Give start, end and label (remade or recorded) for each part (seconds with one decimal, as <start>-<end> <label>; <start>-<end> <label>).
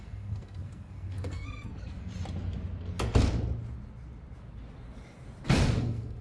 0.0-2.1 remade; 2.1-5.8 recorded; 5.8-6.2 remade